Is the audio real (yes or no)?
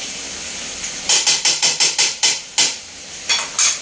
yes